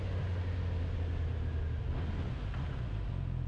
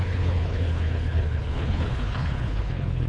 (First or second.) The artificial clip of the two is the second